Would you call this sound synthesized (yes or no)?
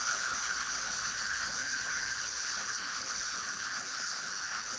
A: yes